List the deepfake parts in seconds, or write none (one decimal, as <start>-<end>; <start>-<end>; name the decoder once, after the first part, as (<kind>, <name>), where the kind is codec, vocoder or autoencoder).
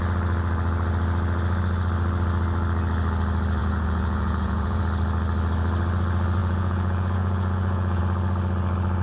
3.6-4.8 (vocoder, Vocos); 6.4-8.0